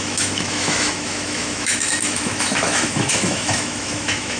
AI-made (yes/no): yes